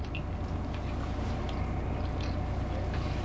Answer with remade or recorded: recorded